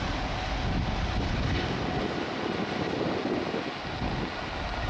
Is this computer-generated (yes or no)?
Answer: no